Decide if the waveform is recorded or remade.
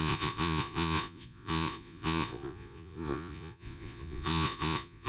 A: remade